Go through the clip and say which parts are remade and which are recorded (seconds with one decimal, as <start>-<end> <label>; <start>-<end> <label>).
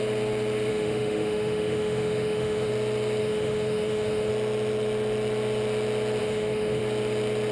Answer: 0.0-0.7 recorded; 0.7-2.7 remade; 2.7-3.2 recorded; 3.2-4.3 remade; 4.3-6.2 recorded; 6.2-6.8 remade; 6.8-7.5 recorded